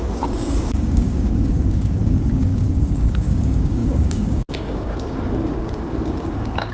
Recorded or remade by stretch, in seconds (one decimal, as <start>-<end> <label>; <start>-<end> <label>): 0.0-6.7 remade